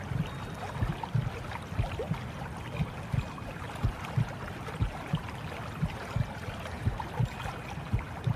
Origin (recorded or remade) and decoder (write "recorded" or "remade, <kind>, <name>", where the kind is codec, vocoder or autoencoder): recorded